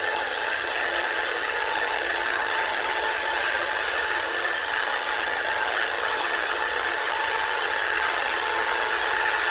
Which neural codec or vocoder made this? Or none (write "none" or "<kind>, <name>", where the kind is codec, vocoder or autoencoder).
vocoder, HiFi-GAN